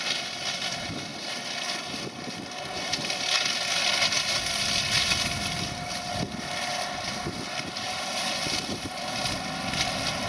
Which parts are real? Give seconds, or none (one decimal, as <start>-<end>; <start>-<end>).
0.0-10.3